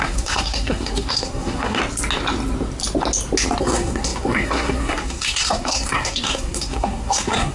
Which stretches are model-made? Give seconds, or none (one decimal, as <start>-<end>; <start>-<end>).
0.0-1.8; 3.6-7.5